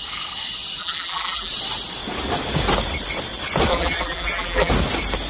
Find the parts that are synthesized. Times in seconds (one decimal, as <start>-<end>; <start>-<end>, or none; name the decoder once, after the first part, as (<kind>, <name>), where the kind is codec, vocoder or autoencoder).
0.8-1.5 (vocoder, BigVGAN v2); 3.7-4.7